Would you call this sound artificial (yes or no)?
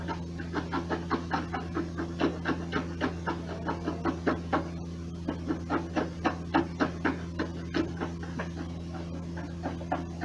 no